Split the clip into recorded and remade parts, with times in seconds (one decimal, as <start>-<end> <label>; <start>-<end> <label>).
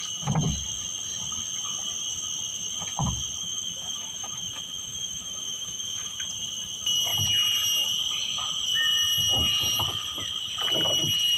0.0-3.4 recorded; 3.4-6.3 remade; 6.3-11.4 recorded